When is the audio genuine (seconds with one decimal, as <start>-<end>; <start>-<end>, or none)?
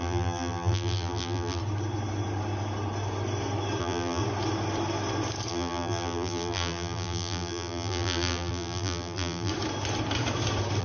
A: 1.6-3.8; 4.2-5.5; 9.5-10.8